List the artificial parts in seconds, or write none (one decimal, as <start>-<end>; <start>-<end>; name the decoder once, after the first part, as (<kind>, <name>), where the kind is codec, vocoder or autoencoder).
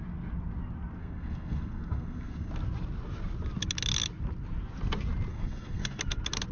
1.0-2.5 (codec, SNAC); 5.3-6.0